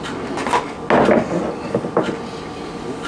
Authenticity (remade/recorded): recorded